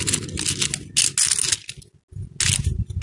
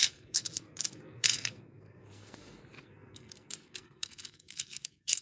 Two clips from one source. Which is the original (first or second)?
first